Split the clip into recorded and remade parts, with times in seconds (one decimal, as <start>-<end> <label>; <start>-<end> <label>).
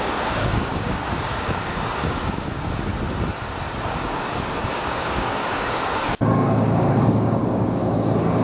0.0-2.9 remade; 2.9-3.9 recorded; 3.9-8.4 remade